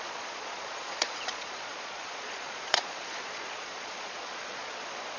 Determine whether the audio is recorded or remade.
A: remade